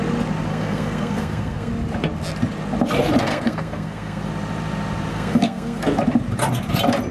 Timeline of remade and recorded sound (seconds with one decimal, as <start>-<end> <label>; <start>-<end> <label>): 0.0-0.5 recorded; 0.5-1.7 remade; 1.7-3.3 recorded; 3.3-4.3 remade; 4.3-5.1 recorded; 5.1-5.8 remade; 5.8-7.1 recorded